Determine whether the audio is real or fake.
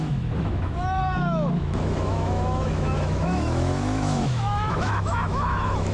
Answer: fake